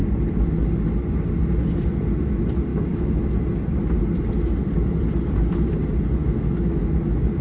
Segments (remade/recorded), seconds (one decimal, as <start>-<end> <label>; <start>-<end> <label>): 0.0-2.7 recorded; 2.7-3.2 remade; 3.2-6.2 recorded; 6.2-6.8 remade; 6.8-7.4 recorded